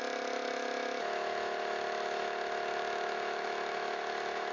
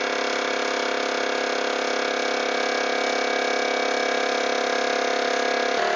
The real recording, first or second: second